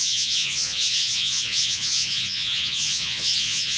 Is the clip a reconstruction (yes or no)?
yes